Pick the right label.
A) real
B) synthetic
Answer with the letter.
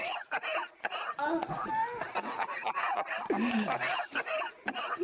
A